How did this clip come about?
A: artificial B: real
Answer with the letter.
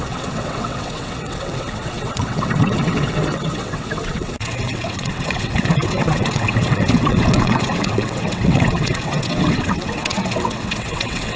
A